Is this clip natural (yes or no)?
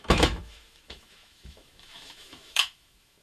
no